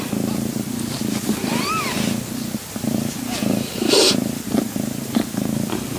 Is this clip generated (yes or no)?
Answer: no